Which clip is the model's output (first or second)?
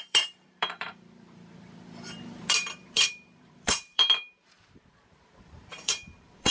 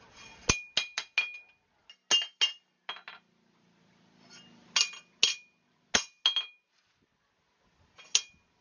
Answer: first